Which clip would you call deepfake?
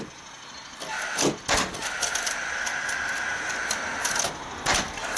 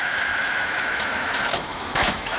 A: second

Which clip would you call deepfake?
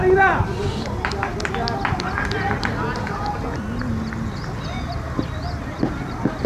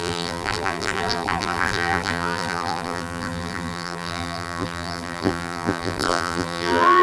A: second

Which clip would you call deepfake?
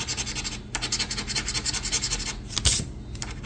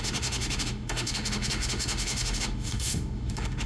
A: second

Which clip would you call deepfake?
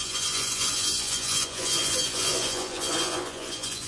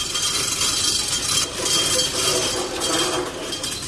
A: first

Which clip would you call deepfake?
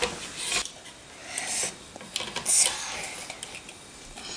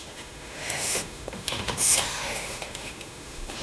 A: second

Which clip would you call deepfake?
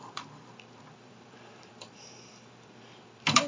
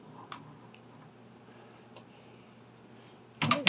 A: first